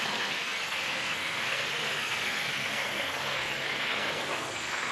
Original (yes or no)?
no